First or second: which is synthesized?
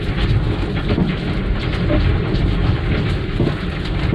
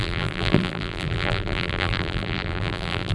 second